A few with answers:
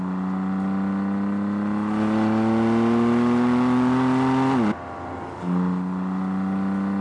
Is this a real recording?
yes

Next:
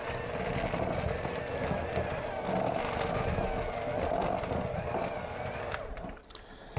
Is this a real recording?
yes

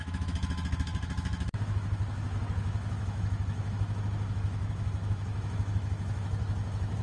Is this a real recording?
no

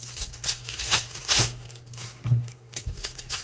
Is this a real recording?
no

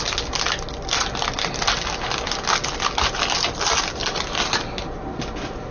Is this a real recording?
yes